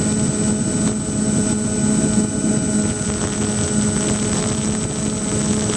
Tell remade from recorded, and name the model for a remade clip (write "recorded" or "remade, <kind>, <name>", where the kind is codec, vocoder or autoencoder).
recorded